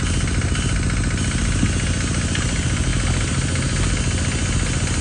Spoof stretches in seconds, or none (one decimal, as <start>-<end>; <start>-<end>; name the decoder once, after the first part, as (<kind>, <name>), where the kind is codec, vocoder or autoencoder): none